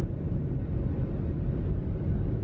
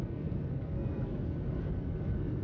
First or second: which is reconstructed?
second